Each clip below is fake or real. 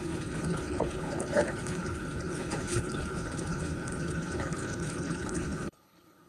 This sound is fake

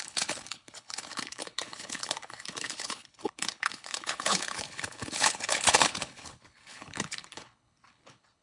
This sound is fake